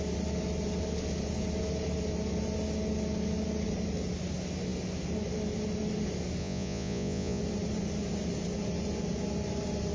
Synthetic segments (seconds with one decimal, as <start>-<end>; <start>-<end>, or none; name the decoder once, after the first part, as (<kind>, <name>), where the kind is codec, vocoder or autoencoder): 6.4-7.4 (vocoder, Vocos)